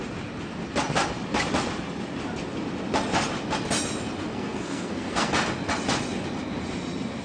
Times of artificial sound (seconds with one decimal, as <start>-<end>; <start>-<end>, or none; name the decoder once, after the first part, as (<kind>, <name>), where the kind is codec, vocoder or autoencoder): 4.3-5.3 (codec, SNAC)